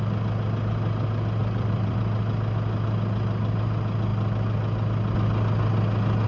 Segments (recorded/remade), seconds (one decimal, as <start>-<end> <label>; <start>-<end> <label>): 0.0-1.4 recorded; 1.4-2.0 remade; 2.0-6.3 recorded